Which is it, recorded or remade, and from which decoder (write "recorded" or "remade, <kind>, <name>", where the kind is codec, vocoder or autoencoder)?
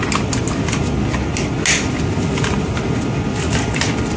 recorded